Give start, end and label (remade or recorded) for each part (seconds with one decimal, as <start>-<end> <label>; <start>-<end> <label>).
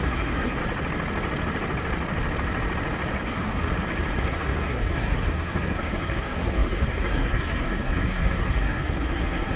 0.0-0.6 remade; 0.6-3.2 recorded; 3.2-3.7 remade; 3.7-4.2 recorded; 4.2-9.6 remade